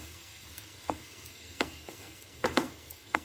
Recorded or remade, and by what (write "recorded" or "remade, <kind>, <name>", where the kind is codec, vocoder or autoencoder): remade, codec, SNAC